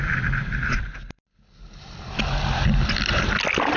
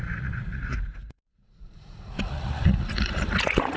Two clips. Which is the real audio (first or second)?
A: first